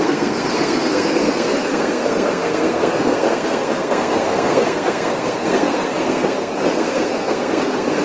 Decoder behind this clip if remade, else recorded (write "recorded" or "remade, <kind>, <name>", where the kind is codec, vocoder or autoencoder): remade, codec, SNAC